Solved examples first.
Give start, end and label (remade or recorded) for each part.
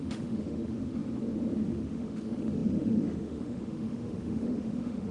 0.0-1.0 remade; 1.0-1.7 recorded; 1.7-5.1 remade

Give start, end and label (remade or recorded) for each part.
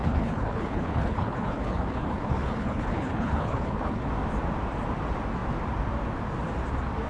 0.0-4.1 remade; 4.1-7.1 recorded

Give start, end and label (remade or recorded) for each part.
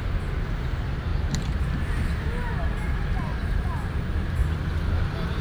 0.0-1.1 recorded; 1.1-2.3 remade; 2.3-3.3 recorded; 3.3-4.0 remade; 4.0-5.4 recorded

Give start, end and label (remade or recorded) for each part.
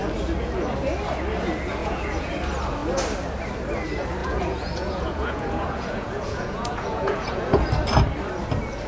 0.0-1.8 recorded; 1.8-2.3 remade; 2.3-4.2 recorded; 4.2-7.6 remade; 7.6-8.9 recorded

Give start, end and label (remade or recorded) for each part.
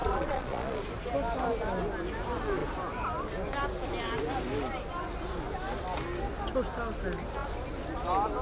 0.0-0.8 remade; 0.8-8.4 recorded